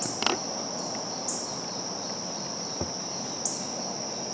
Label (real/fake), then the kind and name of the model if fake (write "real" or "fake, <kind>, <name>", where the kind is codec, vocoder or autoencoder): real